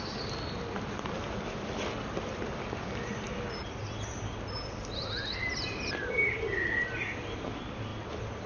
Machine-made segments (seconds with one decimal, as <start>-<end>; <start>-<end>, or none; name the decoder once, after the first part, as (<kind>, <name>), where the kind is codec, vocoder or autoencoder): none